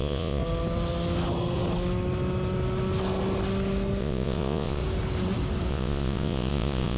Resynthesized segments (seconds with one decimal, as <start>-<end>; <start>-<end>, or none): 0.0-0.4; 4.0-4.8; 5.7-7.0